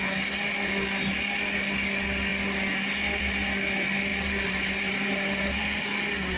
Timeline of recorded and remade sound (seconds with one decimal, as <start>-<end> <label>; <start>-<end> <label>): 0.0-4.1 recorded; 4.1-5.6 remade; 5.6-6.4 recorded